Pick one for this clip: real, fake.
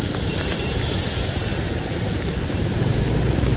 fake